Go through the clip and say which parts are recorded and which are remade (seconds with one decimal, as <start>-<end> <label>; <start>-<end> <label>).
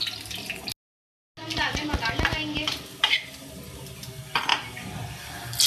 0.0-5.7 recorded